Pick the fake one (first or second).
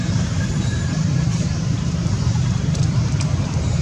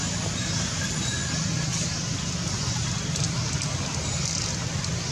first